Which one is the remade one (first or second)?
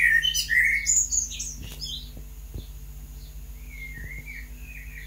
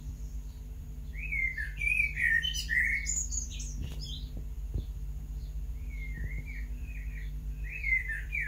second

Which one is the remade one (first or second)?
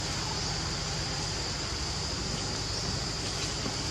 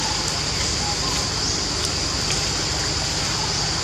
second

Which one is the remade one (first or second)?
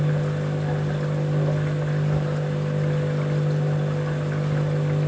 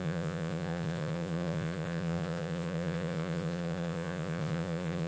second